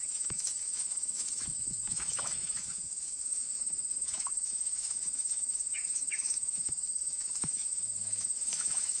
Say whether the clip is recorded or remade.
remade